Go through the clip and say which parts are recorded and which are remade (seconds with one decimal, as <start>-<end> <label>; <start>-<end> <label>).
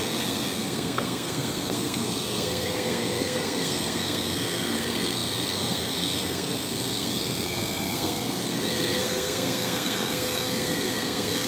0.0-11.5 remade